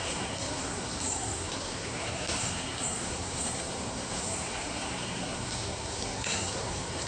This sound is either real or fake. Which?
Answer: fake